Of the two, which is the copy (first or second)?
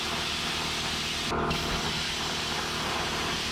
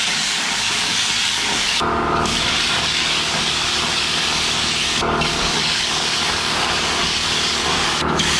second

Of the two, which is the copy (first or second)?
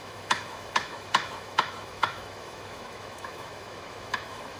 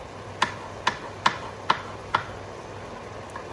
first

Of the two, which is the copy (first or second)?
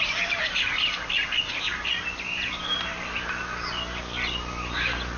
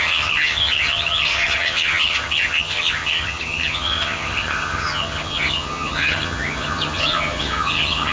second